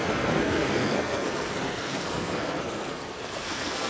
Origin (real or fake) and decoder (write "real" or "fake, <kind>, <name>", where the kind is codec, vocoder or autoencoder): fake, codec, SNAC